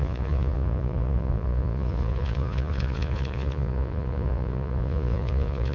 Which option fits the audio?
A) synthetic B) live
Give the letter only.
A